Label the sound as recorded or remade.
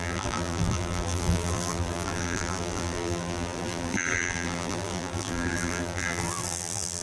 remade